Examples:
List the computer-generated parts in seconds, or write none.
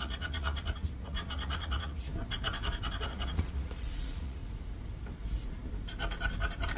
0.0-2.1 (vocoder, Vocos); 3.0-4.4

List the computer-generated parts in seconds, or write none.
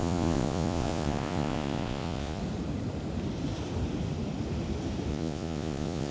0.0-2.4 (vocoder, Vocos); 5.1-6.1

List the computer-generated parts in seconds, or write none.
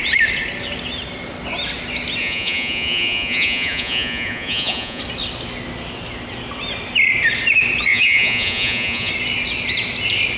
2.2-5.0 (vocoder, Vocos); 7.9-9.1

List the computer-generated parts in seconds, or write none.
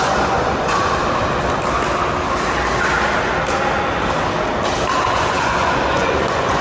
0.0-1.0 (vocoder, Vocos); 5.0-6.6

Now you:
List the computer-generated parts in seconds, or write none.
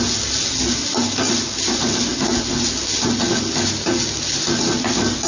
none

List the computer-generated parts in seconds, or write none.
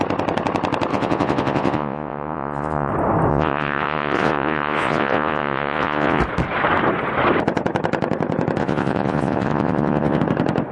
0.9-2.9 (vocoder, Vocos); 3.3-6.2; 8.6-10.2